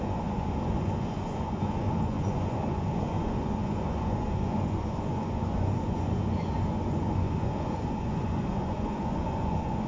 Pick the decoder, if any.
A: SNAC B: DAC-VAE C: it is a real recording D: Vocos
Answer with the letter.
D